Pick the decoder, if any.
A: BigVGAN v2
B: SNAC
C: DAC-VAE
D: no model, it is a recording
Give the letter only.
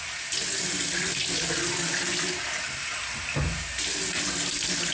D